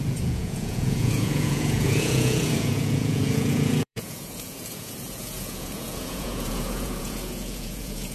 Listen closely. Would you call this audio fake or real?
fake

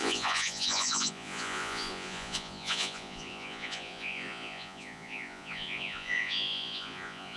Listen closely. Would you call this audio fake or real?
fake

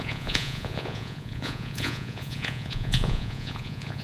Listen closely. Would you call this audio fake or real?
fake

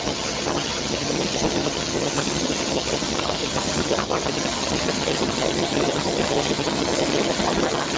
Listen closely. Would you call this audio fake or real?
fake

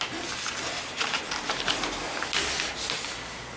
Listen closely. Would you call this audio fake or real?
real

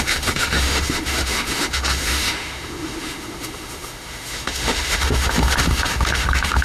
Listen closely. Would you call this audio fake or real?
fake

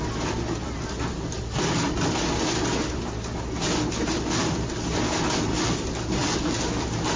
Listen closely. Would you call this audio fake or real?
real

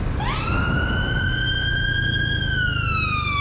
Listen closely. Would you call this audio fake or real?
real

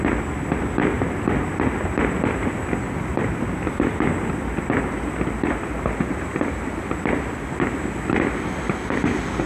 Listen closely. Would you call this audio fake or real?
real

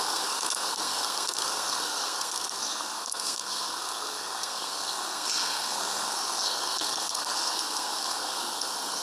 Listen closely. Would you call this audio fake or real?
fake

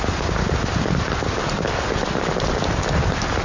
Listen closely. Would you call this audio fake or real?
real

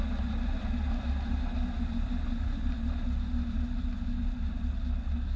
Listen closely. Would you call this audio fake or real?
real